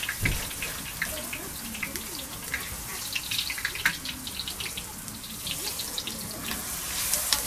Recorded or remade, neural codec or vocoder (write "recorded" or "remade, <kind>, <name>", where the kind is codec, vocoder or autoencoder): recorded